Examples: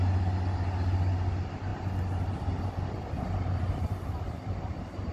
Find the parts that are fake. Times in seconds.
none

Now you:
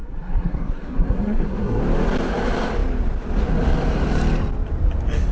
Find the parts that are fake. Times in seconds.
0.0-1.8 (codec, SNAC)

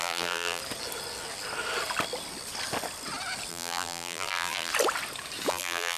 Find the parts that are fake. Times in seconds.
0.0-0.6 (vocoder, BigVGAN v2); 3.5-4.7; 5.5-6.0

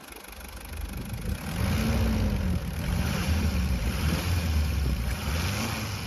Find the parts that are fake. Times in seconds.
2.6-5.3 (vocoder, BigVGAN v2)

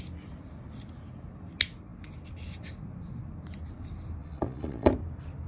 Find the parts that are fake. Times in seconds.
4.2-4.9 (vocoder, Vocos)

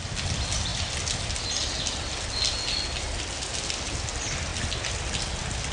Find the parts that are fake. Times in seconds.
none

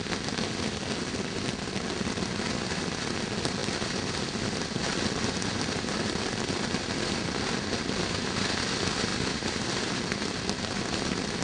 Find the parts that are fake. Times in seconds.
3.6-8.0 (vocoder, BigVGAN v2); 9.1-10.4